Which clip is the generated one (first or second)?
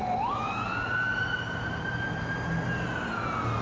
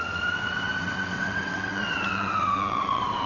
second